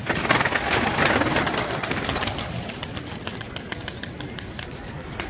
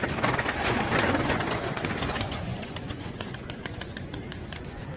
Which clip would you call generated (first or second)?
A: second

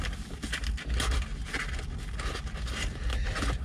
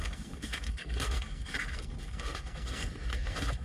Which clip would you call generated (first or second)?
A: second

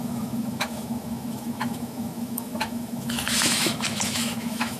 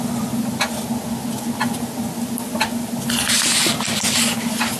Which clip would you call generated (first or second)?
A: first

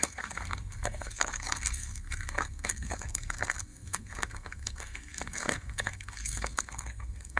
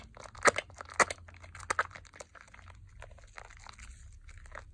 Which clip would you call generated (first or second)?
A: first